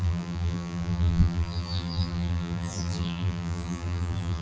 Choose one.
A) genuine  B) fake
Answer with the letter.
B